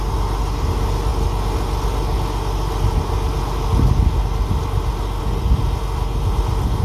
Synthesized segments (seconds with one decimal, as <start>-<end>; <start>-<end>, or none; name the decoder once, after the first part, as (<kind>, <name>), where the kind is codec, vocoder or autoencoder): none